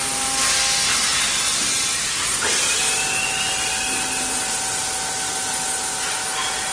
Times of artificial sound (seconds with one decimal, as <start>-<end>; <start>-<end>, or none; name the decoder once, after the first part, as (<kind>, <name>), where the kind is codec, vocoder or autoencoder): none